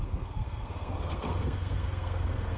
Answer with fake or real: fake